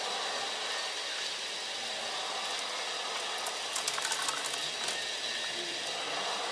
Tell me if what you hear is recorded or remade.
recorded